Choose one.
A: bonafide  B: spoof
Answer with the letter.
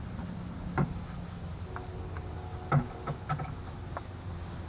A